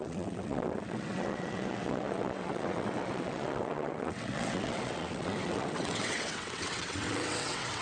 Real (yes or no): no